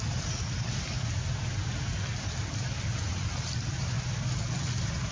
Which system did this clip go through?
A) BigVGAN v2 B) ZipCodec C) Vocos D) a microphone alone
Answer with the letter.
A